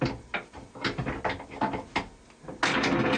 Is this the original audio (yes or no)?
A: yes